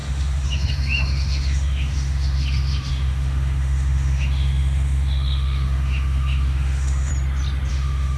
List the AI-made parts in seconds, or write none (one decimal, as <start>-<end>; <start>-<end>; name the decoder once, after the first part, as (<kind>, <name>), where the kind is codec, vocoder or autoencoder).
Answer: 0.0-7.1 (autoencoder, DAC-VAE); 7.7-8.2

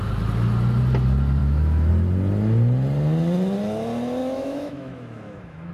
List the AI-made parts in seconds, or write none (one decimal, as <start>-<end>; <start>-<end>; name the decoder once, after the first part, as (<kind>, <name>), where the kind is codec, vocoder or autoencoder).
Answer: 1.4-1.9 (autoencoder, DAC-VAE); 4.2-5.7

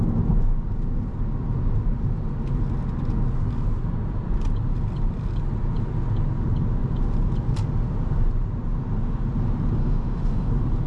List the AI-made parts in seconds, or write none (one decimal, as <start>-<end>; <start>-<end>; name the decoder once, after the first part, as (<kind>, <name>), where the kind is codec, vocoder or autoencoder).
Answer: 9.8-10.5 (autoencoder, DAC-VAE)

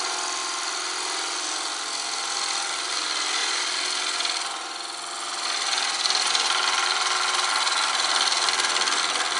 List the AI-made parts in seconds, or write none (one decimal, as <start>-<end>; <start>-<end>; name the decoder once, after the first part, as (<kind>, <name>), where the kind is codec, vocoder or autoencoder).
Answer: none